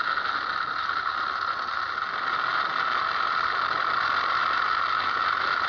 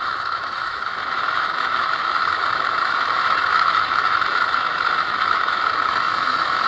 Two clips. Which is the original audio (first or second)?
first